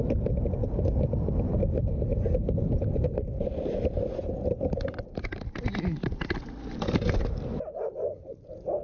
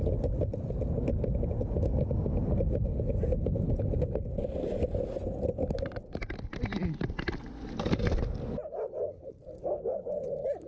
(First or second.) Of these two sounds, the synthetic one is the first